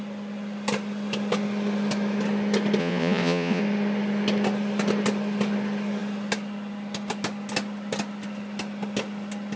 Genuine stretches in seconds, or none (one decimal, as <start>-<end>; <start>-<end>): 0.0-2.8; 3.6-9.6

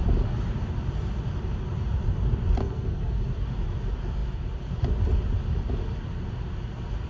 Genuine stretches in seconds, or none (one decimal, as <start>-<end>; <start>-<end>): 0.0-2.6; 3.2-7.1

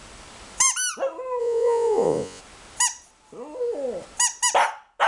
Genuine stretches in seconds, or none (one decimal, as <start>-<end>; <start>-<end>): 0.0-1.4; 2.4-5.1

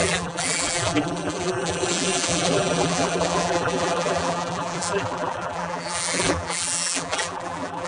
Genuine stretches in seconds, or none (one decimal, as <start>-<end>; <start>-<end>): none

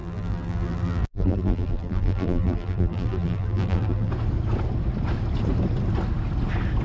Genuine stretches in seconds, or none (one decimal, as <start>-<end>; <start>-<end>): 4.1-6.8

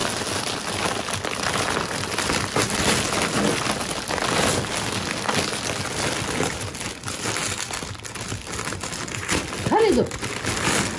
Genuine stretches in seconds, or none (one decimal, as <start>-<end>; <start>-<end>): 0.0-11.0

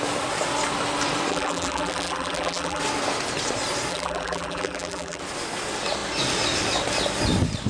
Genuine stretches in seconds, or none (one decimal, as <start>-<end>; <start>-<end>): 0.0-1.3; 2.8-3.9; 5.2-7.7

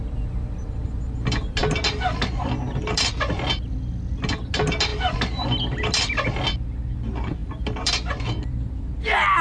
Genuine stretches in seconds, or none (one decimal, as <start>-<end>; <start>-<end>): 0.0-9.4